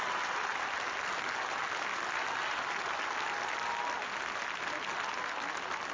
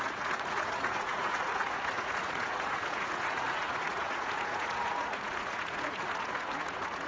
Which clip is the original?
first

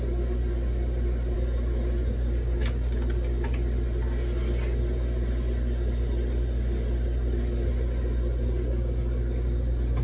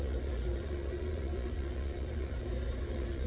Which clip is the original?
first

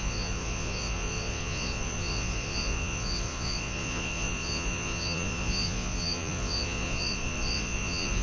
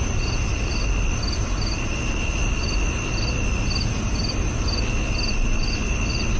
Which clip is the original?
second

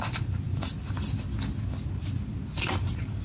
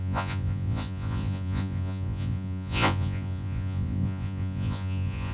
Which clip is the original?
first